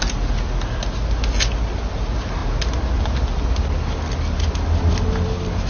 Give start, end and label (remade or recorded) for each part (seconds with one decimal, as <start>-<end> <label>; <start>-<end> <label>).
0.0-5.7 recorded